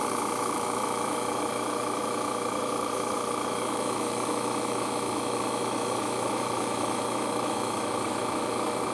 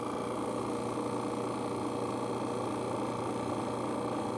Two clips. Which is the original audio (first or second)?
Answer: second